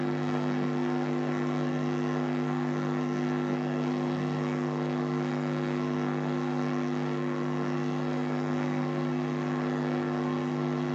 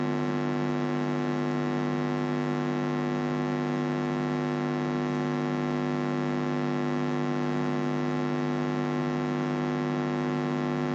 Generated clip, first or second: first